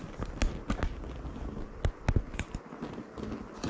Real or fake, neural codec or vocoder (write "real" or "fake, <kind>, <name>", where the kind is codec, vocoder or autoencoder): real